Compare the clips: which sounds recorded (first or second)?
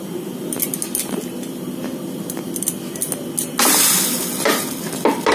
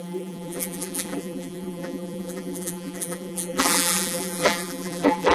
first